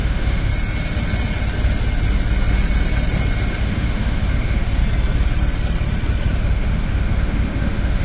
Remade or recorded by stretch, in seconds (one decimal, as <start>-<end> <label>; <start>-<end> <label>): 0.0-0.5 remade; 0.5-3.6 recorded; 3.6-4.8 remade; 4.8-6.3 recorded; 6.3-8.0 remade

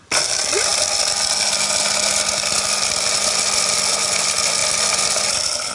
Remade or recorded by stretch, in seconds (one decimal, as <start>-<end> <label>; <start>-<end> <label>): 0.0-5.7 recorded